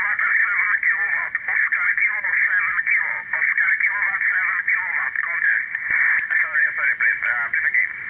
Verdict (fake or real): fake